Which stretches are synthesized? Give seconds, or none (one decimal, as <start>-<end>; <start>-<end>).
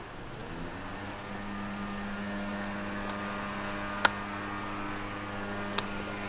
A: none